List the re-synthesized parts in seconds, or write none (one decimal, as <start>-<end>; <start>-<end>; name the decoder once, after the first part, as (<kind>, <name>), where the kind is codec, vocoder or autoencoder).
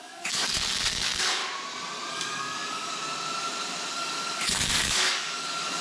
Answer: 0.0-1.4 (codec, DAC); 2.1-3.0; 3.9-5.8